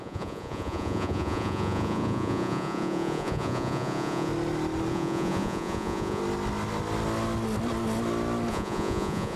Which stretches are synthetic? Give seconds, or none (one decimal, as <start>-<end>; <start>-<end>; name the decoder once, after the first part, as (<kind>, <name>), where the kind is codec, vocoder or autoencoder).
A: 0.0-4.3 (vocoder, Vocos); 4.9-6.2; 8.5-9.4